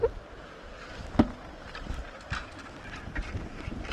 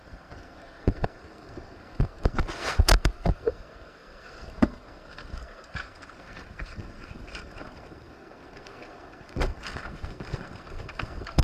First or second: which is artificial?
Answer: second